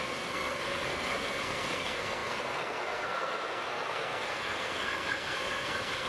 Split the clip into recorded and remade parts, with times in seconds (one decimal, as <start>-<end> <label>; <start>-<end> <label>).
0.0-6.1 remade